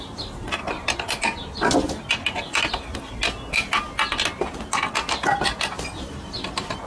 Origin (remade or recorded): recorded